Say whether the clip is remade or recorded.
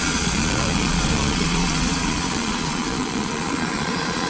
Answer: remade